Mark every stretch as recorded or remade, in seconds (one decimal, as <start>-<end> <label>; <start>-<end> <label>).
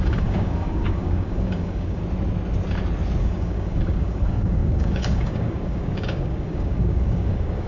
0.0-2.0 remade; 2.0-3.2 recorded; 3.2-7.7 remade